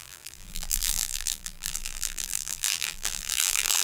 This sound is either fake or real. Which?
fake